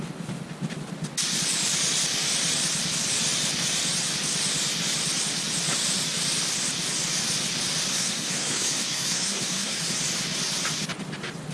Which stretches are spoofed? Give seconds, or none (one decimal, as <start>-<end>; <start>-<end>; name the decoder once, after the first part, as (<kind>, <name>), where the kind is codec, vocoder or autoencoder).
7.9-10.0 (codec, SNAC)